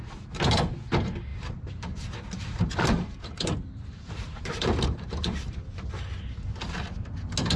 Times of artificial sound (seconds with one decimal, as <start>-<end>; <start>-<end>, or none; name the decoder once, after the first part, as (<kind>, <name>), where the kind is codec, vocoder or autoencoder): 1.3-5.9 (vocoder, BigVGAN v2)

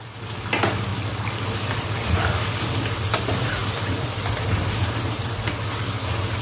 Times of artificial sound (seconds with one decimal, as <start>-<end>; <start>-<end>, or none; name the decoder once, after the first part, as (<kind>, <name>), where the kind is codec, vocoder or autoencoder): 0.9-3.2 (vocoder, BigVGAN v2); 3.6-5.3

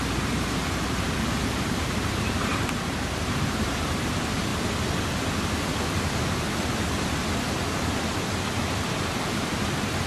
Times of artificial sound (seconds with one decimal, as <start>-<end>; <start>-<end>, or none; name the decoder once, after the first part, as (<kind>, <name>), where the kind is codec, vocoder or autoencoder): 0.0-4.5 (vocoder, BigVGAN v2); 9.3-10.1

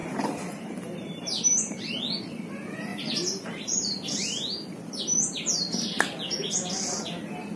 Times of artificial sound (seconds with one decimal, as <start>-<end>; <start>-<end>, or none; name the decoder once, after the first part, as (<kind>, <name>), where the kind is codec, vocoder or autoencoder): 0.0-2.0 (vocoder, BigVGAN v2); 2.9-5.0

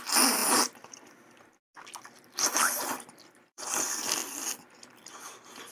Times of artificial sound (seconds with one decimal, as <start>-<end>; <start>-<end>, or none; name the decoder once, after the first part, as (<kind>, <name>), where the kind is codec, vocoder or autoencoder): 0.4-3.6 (vocoder, BigVGAN v2); 4.2-5.2

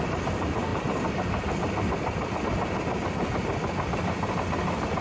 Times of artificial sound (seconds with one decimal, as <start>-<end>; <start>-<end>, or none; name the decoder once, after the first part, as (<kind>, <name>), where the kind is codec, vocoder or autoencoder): 0.7-2.4 (vocoder, BigVGAN v2)

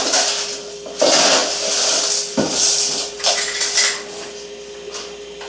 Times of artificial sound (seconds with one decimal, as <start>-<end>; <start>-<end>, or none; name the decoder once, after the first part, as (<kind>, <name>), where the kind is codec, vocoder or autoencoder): none